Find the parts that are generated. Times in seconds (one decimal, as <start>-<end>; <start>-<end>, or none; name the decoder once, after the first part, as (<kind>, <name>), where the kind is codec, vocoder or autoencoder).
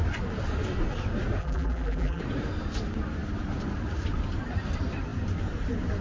1.4-2.2 (vocoder, BigVGAN v2)